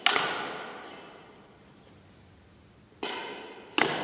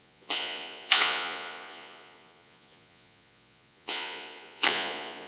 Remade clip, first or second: second